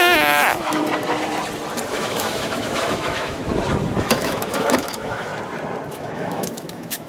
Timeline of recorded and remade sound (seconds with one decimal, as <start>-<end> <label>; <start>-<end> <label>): 0.0-0.8 remade; 0.8-1.9 recorded; 1.9-3.4 remade; 3.4-4.0 recorded; 4.0-5.3 remade; 5.3-5.9 recorded; 5.9-7.1 remade